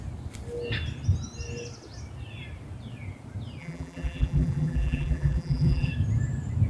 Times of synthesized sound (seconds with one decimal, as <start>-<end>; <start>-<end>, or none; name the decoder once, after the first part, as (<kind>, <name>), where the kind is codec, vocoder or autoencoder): 3.6-5.9 (vocoder, BigVGAN v2)